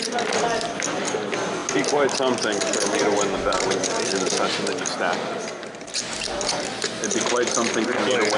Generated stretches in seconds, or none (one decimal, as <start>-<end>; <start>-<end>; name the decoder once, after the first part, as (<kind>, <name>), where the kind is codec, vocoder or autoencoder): none